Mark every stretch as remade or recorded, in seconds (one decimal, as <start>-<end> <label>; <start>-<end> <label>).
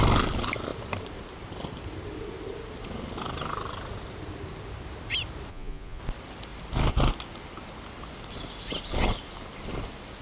0.0-5.5 recorded; 5.5-6.0 remade; 6.0-10.2 recorded